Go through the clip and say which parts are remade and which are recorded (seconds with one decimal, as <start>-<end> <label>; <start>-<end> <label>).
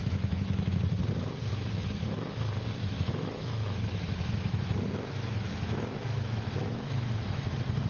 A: 0.0-0.8 remade; 0.8-1.5 recorded; 1.5-2.3 remade; 2.3-2.8 recorded; 2.8-7.5 remade; 7.5-7.9 recorded